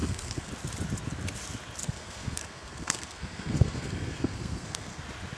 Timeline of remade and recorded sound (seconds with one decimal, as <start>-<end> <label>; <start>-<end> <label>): 0.0-0.5 remade; 0.5-1.8 recorded; 1.8-5.0 remade; 5.0-5.4 recorded